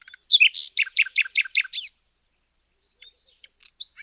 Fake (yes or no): no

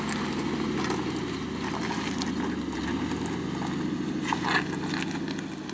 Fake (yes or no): no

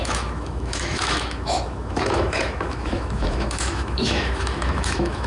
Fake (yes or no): yes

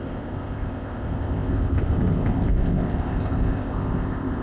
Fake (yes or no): yes